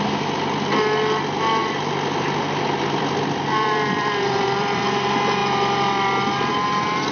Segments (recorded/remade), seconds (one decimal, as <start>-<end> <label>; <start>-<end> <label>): 0.0-1.6 recorded; 1.6-4.8 remade; 4.8-7.1 recorded